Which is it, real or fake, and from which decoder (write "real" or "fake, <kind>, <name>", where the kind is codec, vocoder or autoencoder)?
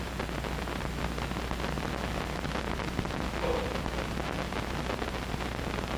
real